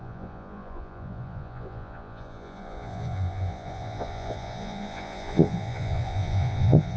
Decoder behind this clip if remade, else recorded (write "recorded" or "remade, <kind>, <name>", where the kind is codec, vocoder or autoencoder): remade, vocoder, Vocos